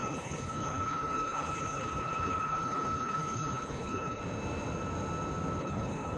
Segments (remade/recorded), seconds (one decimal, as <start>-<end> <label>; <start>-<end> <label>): 0.0-4.2 remade; 4.2-5.6 recorded; 5.6-6.2 remade